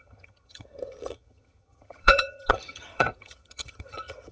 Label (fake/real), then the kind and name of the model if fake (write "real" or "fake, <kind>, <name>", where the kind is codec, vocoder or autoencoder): fake, vocoder, HiFi-GAN